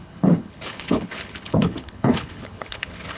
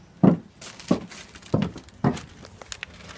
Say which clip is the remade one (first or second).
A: first